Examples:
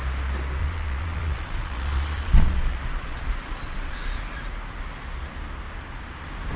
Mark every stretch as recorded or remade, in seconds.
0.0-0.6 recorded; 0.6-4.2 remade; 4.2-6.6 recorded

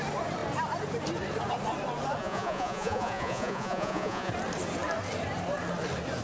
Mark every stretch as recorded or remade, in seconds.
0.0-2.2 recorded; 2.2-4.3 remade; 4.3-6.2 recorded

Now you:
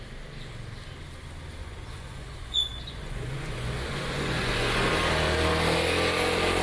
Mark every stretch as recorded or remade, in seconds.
0.0-1.6 recorded; 1.6-4.9 remade; 4.9-6.6 recorded